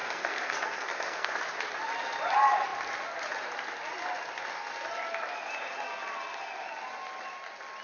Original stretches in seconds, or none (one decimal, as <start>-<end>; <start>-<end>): 1.3-7.8